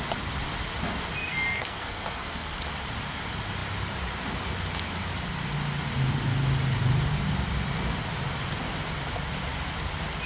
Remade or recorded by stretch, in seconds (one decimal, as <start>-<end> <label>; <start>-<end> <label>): 0.0-1.2 recorded; 1.2-2.6 remade; 2.6-10.3 recorded

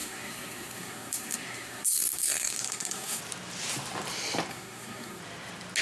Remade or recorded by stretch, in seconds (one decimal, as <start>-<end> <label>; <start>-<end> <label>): 0.0-3.2 remade; 3.2-4.5 recorded; 4.5-5.2 remade; 5.2-5.8 recorded

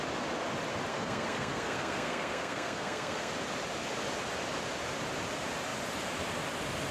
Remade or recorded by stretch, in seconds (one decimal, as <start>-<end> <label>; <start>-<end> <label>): 0.0-0.9 recorded; 0.9-3.3 remade; 3.3-6.9 recorded

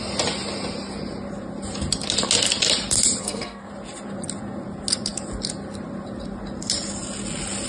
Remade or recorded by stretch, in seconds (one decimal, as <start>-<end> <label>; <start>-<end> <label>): 0.0-3.2 recorded; 3.2-3.7 remade; 3.7-7.7 recorded

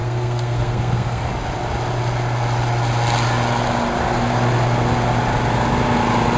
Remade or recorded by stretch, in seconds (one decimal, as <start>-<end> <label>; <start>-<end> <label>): 0.0-1.3 remade; 1.3-6.4 recorded

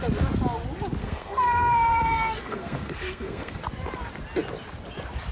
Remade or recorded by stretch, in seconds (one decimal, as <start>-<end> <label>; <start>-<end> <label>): 0.0-1.0 recorded; 1.0-3.6 remade; 3.6-5.3 recorded